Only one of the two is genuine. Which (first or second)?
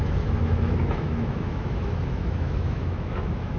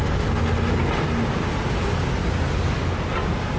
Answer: second